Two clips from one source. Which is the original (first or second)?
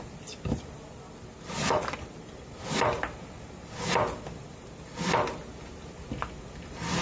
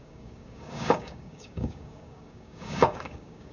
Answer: first